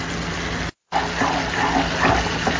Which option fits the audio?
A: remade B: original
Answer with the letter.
B